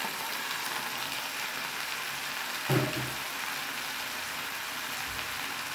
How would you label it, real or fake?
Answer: real